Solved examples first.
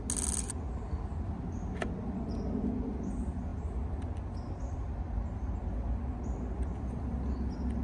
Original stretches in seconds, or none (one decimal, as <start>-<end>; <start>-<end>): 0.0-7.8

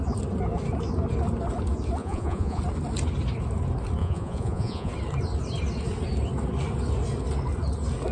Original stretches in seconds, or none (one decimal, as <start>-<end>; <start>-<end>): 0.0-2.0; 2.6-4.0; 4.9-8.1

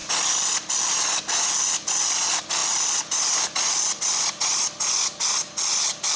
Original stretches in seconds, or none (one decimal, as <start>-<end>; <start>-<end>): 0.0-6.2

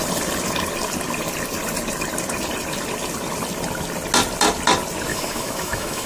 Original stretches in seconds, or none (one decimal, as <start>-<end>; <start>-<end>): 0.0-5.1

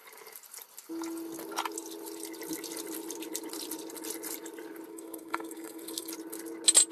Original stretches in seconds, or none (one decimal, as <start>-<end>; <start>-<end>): 0.0-4.9; 6.1-6.9

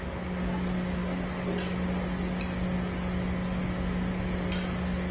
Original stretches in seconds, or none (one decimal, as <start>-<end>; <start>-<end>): 0.0-5.1